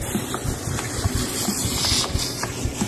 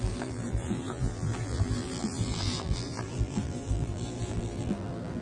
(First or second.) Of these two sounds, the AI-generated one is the second